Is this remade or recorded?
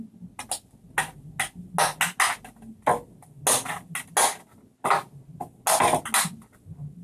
recorded